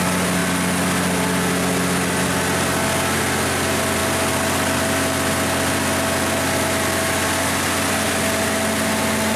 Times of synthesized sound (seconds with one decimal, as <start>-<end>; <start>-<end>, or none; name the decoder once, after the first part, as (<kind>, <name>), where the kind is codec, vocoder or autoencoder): none